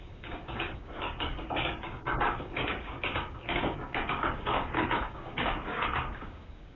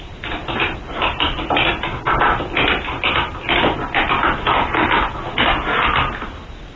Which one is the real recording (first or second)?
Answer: second